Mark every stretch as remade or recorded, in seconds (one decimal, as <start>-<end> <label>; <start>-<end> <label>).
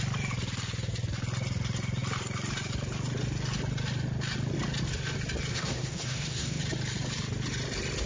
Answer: 0.0-5.5 recorded; 5.5-6.6 remade; 6.6-8.1 recorded